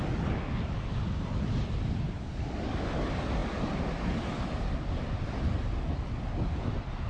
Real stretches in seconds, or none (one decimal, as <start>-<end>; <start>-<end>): 0.0-7.1